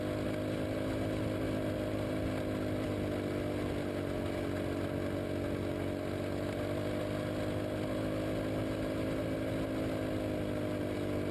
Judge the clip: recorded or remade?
recorded